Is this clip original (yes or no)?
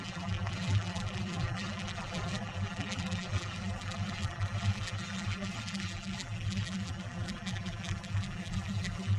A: no